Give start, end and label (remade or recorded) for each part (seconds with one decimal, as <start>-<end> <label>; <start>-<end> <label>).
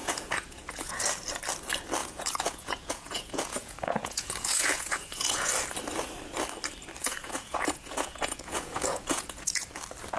0.0-1.0 remade; 1.0-2.0 recorded; 2.0-5.5 remade; 5.5-7.0 recorded; 7.0-9.7 remade; 9.7-10.2 recorded